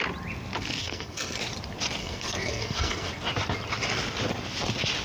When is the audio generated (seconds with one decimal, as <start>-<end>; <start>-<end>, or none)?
0.8-1.4; 2.0-3.1